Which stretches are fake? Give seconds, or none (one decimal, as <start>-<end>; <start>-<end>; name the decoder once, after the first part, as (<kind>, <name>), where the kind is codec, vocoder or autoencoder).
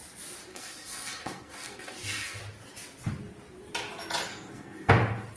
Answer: 0.5-2.4 (codec, SNAC); 4.3-4.9